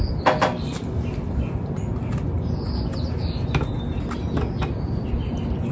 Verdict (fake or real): real